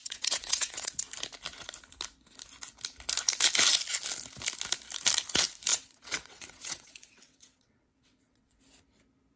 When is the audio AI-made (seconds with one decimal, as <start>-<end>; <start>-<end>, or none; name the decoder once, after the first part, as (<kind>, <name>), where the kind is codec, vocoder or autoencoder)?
0.0-1.0 (vocoder, WaveNeXt); 5.7-8.6